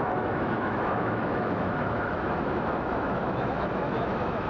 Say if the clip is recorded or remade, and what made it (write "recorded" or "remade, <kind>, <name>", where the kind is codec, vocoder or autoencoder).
remade, autoencoder, DAC-VAE